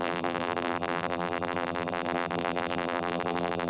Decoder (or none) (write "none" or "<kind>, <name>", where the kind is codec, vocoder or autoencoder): vocoder, BigVGAN v2